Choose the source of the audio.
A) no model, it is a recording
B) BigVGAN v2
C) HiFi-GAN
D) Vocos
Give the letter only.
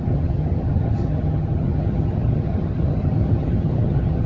C